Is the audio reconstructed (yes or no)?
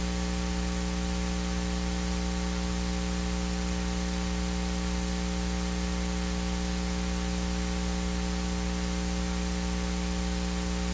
no